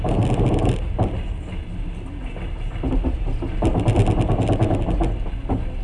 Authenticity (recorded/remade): recorded